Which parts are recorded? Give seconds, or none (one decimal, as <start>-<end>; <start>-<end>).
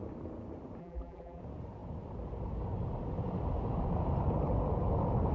0.0-0.8; 1.4-5.3